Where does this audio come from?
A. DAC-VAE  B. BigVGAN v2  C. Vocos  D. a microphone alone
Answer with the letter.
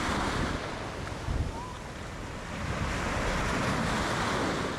D